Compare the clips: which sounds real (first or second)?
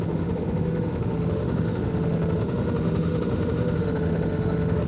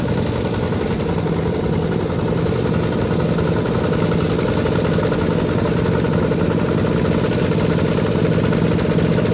second